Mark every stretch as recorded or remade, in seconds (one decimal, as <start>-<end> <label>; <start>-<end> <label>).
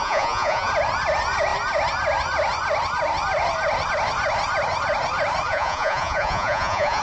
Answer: 0.0-0.7 remade; 0.7-5.5 recorded; 5.5-7.0 remade